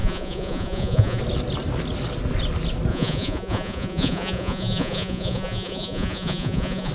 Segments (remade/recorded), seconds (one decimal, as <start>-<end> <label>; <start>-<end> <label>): 0.0-1.2 remade; 1.2-2.9 recorded; 2.9-6.9 remade